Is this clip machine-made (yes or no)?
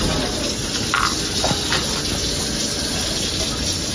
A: no